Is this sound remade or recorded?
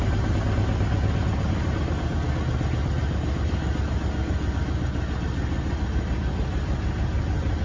recorded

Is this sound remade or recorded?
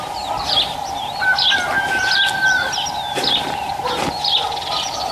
recorded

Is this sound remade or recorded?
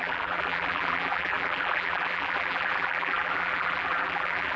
remade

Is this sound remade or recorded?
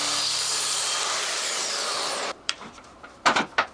remade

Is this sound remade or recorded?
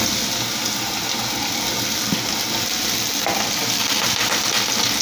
recorded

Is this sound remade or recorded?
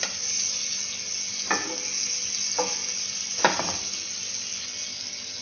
recorded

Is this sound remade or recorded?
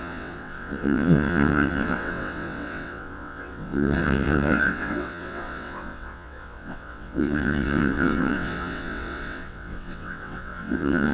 remade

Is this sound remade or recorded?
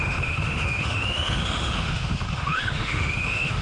remade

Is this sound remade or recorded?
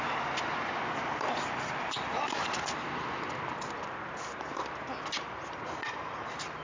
recorded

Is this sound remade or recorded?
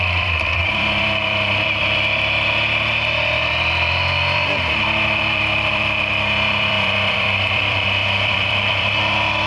remade